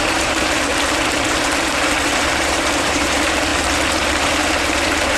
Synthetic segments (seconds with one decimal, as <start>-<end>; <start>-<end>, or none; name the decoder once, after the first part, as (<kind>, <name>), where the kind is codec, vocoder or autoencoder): 0.0-0.7 (vocoder, BigVGAN v2); 1.4-3.5; 4.1-5.2